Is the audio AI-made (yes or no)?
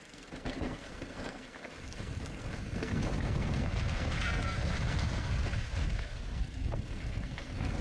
yes